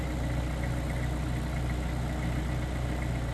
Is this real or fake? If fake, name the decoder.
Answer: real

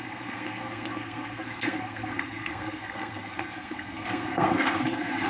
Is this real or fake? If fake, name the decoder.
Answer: fake, codec, SNAC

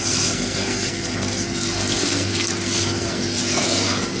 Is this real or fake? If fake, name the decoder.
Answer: fake, codec, SNAC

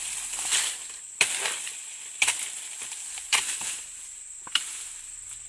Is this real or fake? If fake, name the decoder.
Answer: fake, vocoder, BigVGAN v2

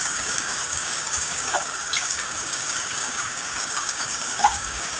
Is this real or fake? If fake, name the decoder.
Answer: fake, codec, DAC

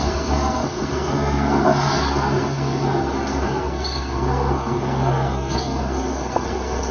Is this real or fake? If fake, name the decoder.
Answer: fake, codec, SNAC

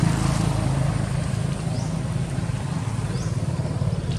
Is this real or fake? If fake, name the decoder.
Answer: real